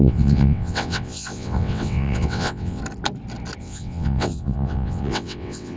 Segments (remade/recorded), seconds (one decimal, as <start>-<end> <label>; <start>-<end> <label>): 0.0-2.8 remade; 2.8-3.6 recorded; 3.6-5.8 remade